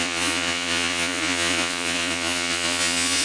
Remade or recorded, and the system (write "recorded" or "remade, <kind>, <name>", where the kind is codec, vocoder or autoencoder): remade, vocoder, Vocos